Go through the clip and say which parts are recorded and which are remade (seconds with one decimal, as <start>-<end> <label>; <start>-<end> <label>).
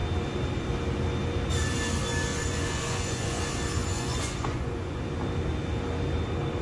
0.0-2.3 recorded; 2.3-3.4 remade; 3.4-3.8 recorded; 3.8-5.0 remade; 5.0-6.6 recorded